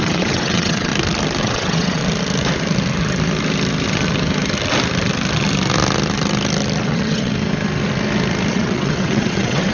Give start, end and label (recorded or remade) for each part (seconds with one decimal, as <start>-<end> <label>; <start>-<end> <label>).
0.0-0.9 remade; 0.9-1.4 recorded; 1.4-2.0 remade; 2.0-6.8 recorded; 6.8-7.3 remade; 7.3-8.5 recorded; 8.5-9.7 remade